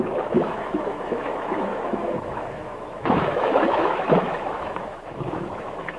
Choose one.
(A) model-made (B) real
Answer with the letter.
A